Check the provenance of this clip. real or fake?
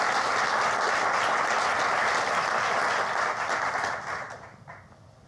real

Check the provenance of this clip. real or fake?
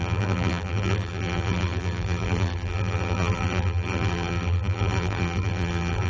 fake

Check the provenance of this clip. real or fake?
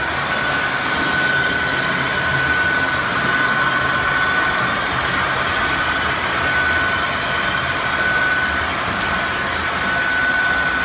real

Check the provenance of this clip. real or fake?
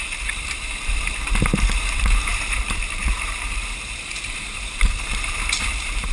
fake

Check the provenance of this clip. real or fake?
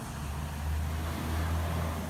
real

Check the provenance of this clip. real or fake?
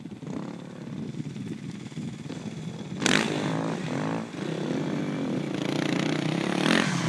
real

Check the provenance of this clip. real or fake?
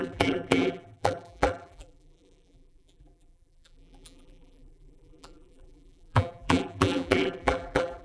fake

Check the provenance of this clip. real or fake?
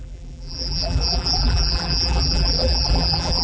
fake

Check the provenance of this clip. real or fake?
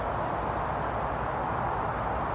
real